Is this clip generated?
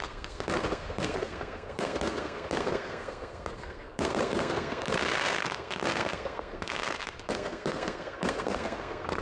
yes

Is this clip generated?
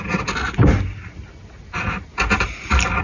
no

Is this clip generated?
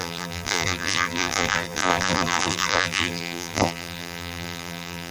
yes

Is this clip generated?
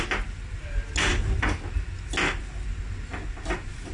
no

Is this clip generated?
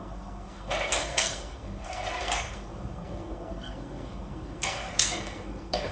yes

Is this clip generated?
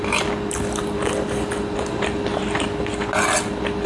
no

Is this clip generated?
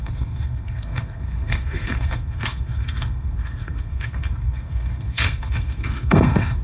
yes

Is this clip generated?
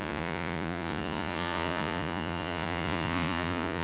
yes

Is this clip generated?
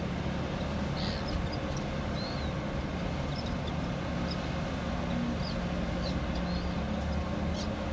no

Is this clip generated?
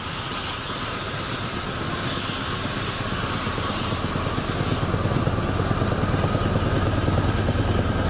no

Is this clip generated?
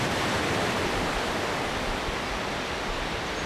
no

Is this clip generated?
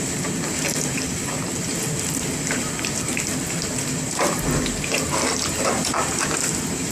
no